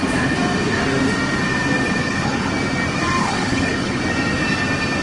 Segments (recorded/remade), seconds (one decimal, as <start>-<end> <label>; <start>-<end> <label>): 0.0-2.0 recorded; 2.0-2.5 remade; 2.5-3.2 recorded; 3.2-4.0 remade; 4.0-5.0 recorded